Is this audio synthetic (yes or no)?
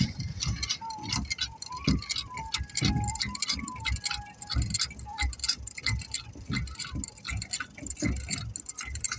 no